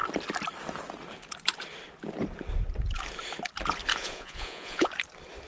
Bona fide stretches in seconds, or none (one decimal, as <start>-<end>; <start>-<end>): 0.0-3.9; 4.9-5.5

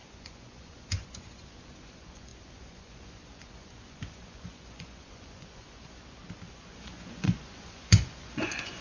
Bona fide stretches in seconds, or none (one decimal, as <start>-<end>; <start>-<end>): 6.0-6.5

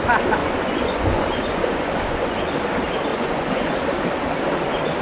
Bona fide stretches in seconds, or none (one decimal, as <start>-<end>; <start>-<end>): 0.0-0.4; 2.4-3.1; 3.7-5.0

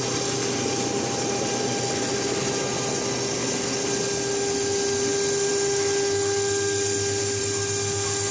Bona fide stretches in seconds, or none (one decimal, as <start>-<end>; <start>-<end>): 0.0-8.3

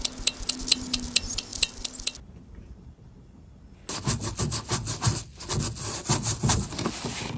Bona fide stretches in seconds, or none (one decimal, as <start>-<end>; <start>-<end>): 0.0-7.4

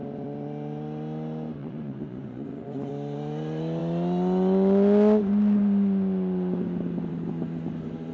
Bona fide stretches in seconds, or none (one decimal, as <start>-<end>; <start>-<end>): 0.0-1.6; 2.9-8.1

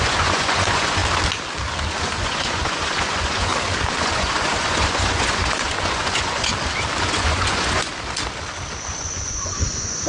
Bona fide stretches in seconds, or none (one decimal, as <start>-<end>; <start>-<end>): 1.0-2.0; 3.5-4.0; 6.5-7.0; 7.9-8.9

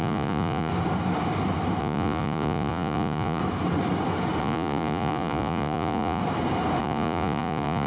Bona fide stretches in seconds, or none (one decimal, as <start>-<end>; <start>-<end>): 0.7-1.8; 3.4-4.4; 6.2-6.8